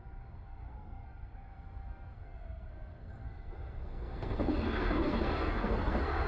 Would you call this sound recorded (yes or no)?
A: no